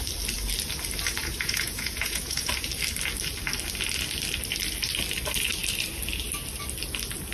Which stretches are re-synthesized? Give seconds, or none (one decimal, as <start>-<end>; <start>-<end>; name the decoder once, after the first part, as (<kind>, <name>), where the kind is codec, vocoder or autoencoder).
1.2-2.5 (vocoder, Vocos)